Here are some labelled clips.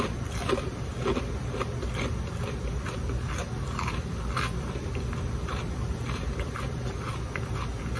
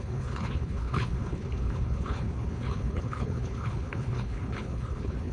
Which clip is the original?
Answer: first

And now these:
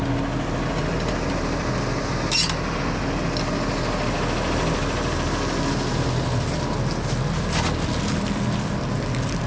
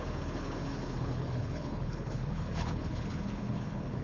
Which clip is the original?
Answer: first